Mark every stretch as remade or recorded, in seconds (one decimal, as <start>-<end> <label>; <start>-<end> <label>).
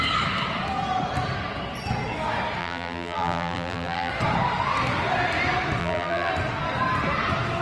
0.0-2.6 recorded; 2.6-4.1 remade; 4.1-5.8 recorded; 5.8-6.3 remade; 6.3-7.6 recorded